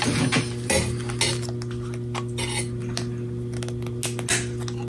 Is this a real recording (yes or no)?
yes